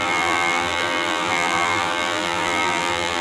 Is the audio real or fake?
fake